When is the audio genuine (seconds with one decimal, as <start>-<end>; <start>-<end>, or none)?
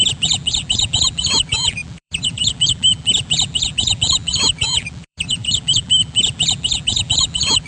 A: none